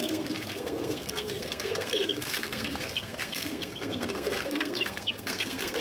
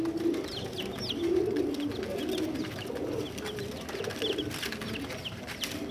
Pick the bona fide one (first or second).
second